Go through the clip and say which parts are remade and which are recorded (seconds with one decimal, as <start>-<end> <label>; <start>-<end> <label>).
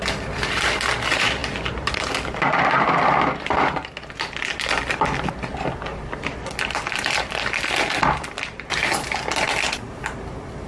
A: 0.0-10.7 recorded